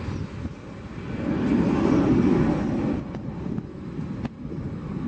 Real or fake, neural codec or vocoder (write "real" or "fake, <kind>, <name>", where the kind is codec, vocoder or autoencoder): real